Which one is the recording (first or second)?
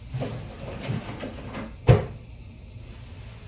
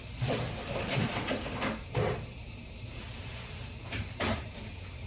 first